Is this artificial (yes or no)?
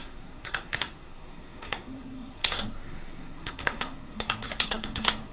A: yes